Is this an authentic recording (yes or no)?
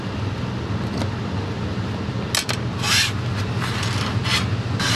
yes